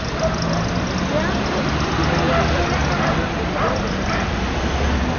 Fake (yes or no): no